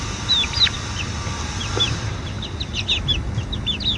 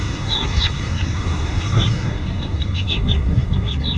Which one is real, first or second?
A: first